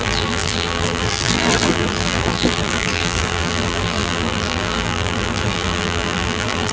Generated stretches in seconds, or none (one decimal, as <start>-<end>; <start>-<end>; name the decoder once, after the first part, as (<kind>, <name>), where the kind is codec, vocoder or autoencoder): 0.0-6.7 (vocoder, BigVGAN v2)